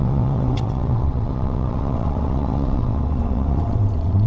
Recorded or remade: remade